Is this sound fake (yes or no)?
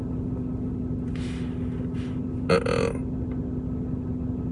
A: no